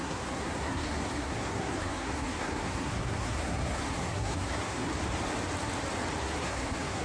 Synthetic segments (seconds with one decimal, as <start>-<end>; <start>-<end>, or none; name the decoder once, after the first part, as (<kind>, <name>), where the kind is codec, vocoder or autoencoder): 0.0-4.9 (codec, SNAC); 6.2-7.0